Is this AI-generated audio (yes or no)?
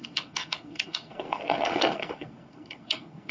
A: yes